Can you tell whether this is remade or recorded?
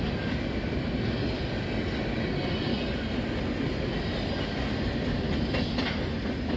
recorded